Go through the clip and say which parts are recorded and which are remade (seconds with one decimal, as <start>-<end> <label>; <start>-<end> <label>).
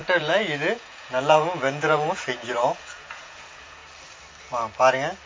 0.0-3.8 remade; 3.8-5.3 recorded